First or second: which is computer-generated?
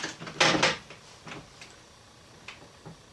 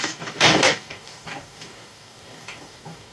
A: second